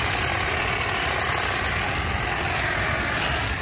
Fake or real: real